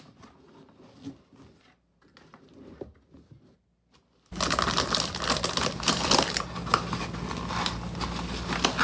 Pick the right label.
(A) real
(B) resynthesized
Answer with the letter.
A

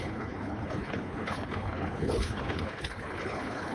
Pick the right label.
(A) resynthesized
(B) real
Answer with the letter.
A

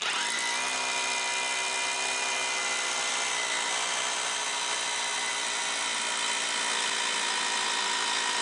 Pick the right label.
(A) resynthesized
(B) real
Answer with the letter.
B